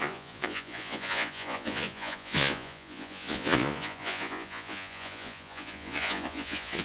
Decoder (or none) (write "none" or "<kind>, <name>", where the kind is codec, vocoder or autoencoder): vocoder, Vocos